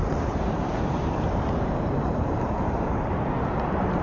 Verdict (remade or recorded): remade